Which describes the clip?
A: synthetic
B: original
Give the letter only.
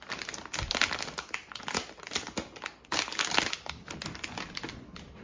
B